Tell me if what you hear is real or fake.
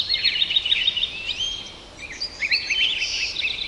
fake